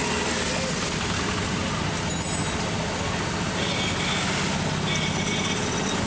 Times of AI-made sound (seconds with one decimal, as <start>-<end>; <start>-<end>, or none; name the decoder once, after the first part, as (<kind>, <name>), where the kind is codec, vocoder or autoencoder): none